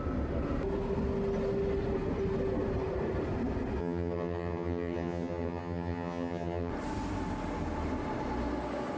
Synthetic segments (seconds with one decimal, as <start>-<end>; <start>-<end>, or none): 3.8-6.7